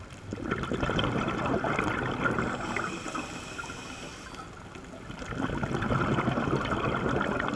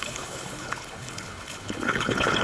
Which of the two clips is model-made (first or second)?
second